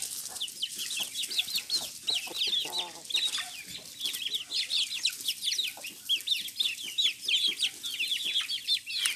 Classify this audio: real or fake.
real